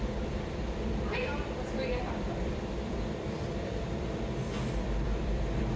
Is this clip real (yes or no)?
no